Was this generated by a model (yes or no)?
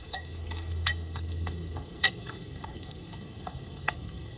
yes